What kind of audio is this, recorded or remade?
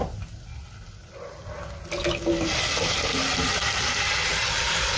recorded